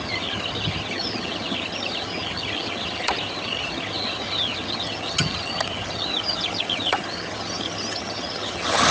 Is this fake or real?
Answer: fake